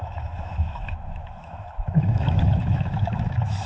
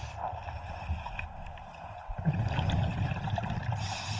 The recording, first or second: second